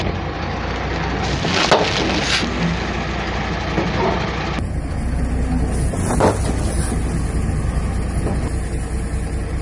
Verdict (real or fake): real